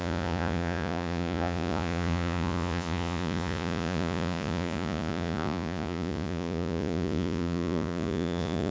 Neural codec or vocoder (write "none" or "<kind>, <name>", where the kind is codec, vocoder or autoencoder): vocoder, Vocos